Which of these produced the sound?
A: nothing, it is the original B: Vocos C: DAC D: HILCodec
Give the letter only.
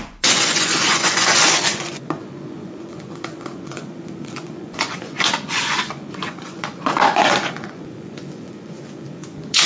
B